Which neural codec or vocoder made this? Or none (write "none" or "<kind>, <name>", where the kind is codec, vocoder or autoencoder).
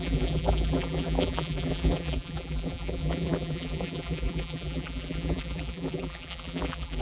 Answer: vocoder, BigVGAN v2